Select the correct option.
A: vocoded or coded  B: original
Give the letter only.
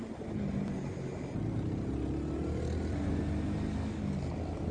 B